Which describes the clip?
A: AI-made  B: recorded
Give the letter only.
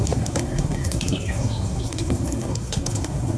A